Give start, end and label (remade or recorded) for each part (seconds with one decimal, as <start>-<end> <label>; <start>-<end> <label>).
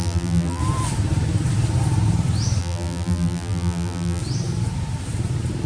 0.0-0.6 remade; 0.6-2.6 recorded; 2.6-4.2 remade; 4.2-5.7 recorded